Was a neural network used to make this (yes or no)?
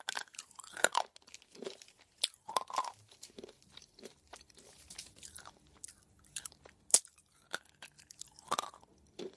no